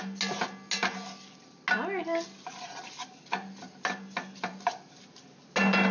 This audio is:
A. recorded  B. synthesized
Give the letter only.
A